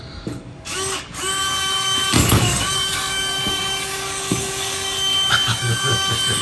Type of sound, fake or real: fake